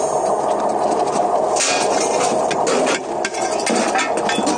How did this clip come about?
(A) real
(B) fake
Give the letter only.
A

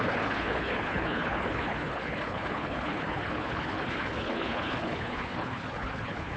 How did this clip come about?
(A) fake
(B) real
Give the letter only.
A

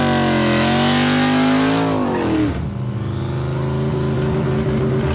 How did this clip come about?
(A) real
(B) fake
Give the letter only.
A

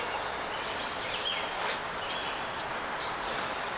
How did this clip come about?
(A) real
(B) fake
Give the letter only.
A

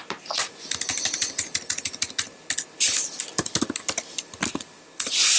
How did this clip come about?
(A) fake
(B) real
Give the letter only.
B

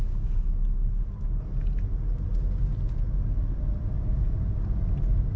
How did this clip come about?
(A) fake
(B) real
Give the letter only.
B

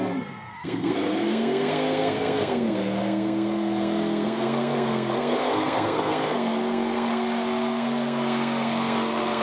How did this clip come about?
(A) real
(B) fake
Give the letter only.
B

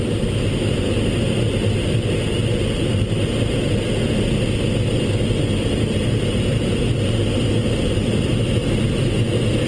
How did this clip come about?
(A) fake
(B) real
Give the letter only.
B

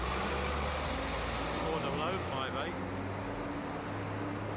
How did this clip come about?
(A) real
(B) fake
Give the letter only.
A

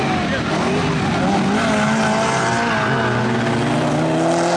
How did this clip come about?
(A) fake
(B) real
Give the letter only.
B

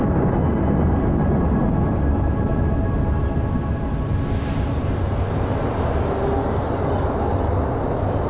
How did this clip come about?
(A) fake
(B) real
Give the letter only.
B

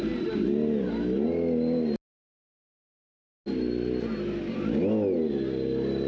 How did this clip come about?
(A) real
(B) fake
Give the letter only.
A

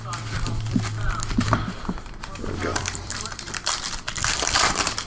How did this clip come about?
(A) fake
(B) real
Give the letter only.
A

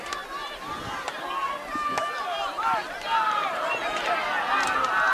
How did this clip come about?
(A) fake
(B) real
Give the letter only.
B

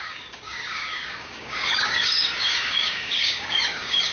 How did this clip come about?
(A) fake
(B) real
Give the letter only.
A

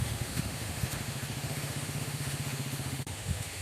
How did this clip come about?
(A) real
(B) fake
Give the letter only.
B